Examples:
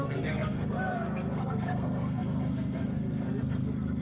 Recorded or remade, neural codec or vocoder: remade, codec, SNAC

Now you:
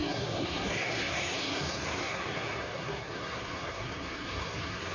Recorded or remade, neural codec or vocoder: remade, codec, SNAC